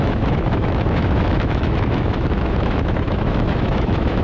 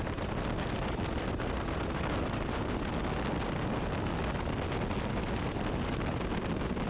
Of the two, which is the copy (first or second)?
first